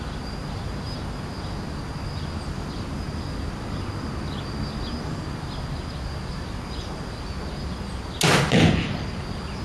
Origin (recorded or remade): recorded